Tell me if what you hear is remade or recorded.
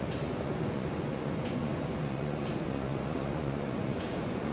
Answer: remade